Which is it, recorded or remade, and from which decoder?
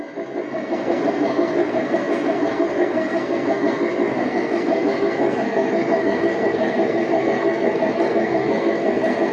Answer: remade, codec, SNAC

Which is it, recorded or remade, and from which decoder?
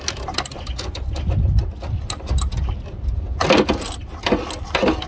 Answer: recorded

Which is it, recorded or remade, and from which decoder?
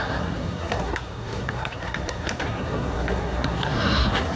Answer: remade, codec, SNAC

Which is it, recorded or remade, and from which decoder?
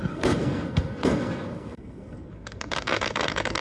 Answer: remade, codec, SNAC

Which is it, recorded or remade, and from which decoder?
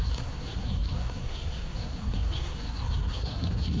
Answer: remade, codec, SNAC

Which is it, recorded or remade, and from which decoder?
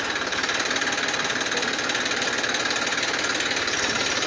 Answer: recorded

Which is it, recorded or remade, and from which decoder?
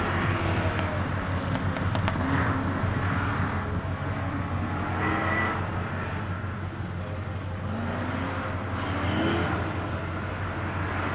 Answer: recorded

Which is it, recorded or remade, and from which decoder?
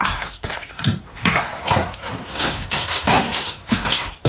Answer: remade, codec, SNAC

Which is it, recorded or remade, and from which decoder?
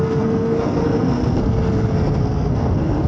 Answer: remade, codec, SNAC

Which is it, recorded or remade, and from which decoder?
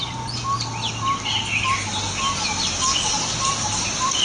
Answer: recorded